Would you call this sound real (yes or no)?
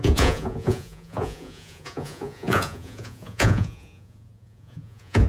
no